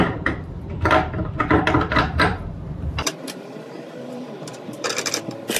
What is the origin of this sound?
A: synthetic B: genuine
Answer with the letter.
A